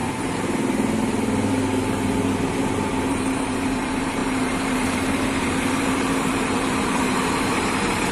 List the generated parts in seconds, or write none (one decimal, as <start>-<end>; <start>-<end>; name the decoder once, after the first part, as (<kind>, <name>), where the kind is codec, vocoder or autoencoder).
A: 3.1-8.1 (vocoder, BigVGAN v2)